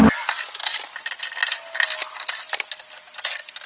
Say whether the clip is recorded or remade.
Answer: recorded